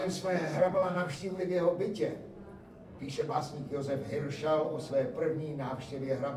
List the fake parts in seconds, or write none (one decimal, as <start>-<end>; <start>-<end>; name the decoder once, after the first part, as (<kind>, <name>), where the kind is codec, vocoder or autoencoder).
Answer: 0.0-1.4 (codec, SNAC); 2.6-3.4